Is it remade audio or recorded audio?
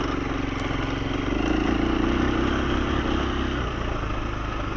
recorded